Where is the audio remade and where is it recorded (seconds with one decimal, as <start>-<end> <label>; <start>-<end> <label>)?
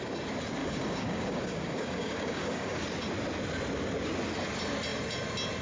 0.0-0.6 recorded; 0.6-2.8 remade; 2.8-5.6 recorded